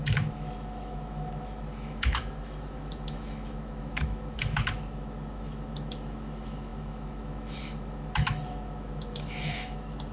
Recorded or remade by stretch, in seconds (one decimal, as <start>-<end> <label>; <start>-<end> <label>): 0.0-10.1 remade